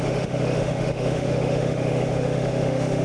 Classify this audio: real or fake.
fake